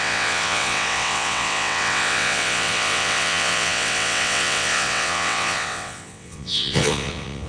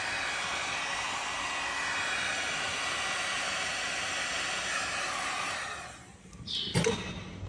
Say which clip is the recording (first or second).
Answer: second